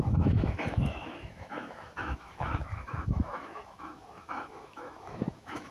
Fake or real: fake